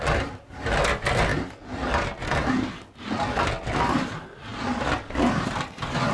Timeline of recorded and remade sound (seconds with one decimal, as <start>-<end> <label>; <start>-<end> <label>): 0.0-6.1 recorded